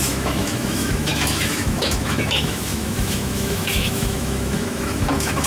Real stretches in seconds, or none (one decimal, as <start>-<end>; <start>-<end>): none